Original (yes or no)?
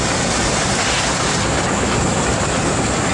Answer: yes